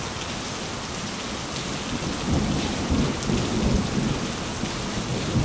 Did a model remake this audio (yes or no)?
no